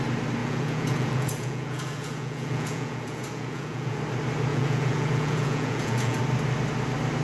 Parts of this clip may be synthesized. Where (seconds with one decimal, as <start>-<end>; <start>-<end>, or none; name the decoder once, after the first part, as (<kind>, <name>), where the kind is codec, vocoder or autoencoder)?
0.4-4.0 (vocoder, Vocos); 4.5-6.2